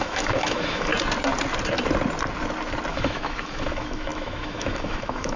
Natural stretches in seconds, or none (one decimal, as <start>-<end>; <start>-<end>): 0.9-2.9